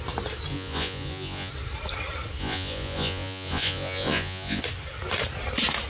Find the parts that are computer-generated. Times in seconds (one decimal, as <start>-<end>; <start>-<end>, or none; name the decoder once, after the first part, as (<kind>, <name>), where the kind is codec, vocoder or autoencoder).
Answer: 0.5-1.5 (vocoder, Vocos); 2.4-4.6